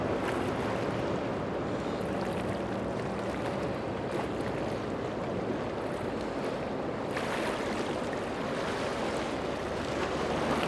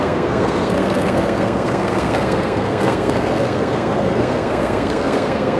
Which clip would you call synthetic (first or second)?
second